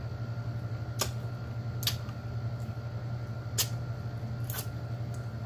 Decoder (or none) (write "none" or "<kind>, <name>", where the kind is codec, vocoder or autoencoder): none